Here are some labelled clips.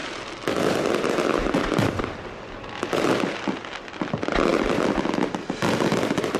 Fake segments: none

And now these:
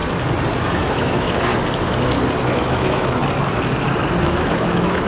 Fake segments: 0.6-1.5 (autoencoder, DAC-VAE); 2.5-3.2; 4.2-5.1